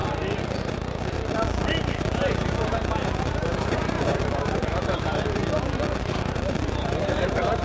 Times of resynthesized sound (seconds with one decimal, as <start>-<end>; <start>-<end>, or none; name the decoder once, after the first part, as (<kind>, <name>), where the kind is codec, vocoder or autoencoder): 0.6-1.2 (vocoder, BigVGAN v2); 1.8-5.4; 6.0-7.6